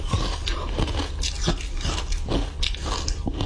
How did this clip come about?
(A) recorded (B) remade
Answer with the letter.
A